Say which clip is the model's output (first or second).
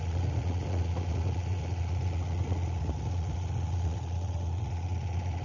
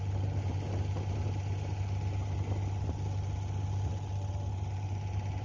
first